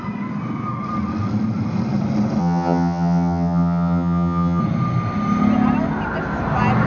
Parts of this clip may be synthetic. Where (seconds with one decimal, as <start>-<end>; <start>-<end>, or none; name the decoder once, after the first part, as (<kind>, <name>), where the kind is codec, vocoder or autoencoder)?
2.4-4.6 (vocoder, HiFi-GAN)